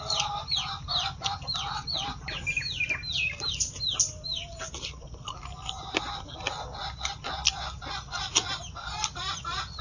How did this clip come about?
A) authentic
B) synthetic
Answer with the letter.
A